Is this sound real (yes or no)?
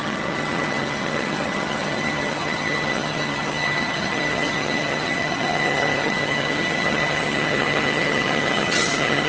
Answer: no